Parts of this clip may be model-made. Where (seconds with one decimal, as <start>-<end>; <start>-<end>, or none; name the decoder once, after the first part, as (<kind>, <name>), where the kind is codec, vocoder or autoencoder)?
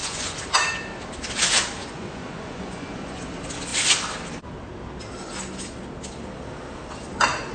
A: 0.0-0.5 (vocoder, Vocos); 1.8-3.3